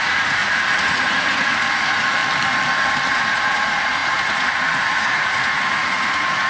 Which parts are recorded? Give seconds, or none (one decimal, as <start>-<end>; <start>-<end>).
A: 2.2-3.1

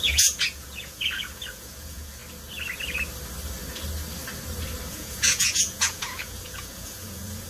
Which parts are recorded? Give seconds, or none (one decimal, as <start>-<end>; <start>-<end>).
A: 2.2-4.9

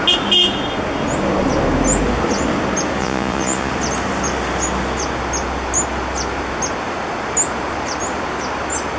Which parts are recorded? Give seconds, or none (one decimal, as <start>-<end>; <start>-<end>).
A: 0.0-3.0; 3.7-9.0

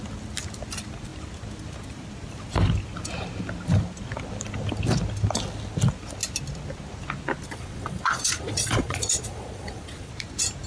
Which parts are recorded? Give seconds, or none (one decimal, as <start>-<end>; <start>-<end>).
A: 0.0-7.5; 10.1-10.7

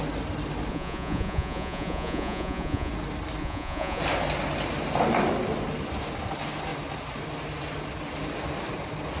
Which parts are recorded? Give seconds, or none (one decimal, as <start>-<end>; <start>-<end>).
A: 0.0-0.7; 2.9-3.4; 4.0-9.2